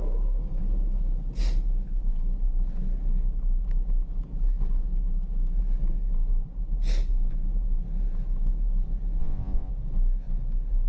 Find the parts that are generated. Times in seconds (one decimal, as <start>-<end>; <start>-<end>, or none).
9.2-9.7